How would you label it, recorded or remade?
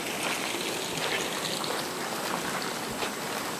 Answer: recorded